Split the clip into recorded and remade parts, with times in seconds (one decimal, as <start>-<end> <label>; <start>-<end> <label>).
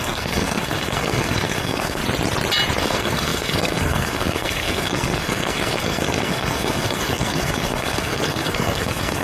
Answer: 0.0-2.0 remade; 2.0-2.8 recorded; 2.8-9.2 remade